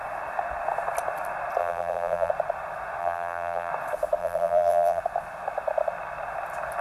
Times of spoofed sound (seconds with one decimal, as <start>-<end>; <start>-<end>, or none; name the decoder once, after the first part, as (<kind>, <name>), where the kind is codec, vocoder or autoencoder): 1.6-2.3 (vocoder, BigVGAN v2); 3.0-3.7; 4.2-5.0